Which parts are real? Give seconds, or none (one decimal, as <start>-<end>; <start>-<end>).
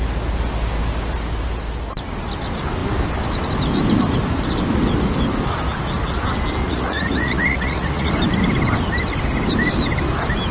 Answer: 0.0-6.6; 8.1-10.5